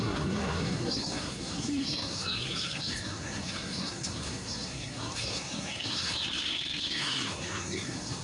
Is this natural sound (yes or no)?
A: no